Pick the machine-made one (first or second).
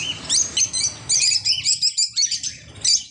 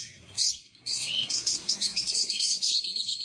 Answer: second